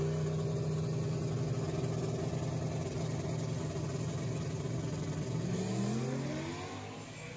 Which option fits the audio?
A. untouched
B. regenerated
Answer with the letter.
A